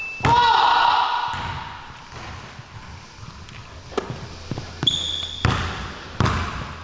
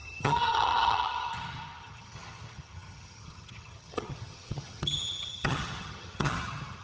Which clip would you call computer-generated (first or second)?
second